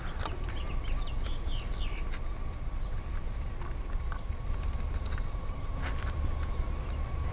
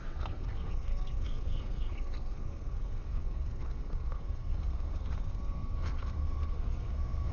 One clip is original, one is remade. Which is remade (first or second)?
second